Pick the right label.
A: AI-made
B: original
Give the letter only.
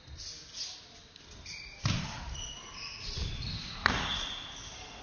B